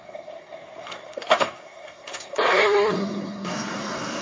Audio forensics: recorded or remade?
remade